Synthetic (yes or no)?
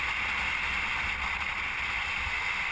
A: no